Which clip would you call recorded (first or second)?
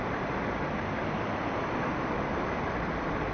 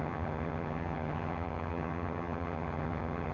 first